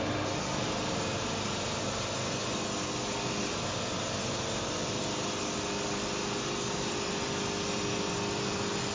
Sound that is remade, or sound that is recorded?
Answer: recorded